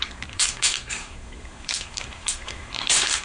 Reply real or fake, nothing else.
fake